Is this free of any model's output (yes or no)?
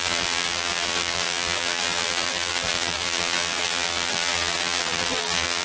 no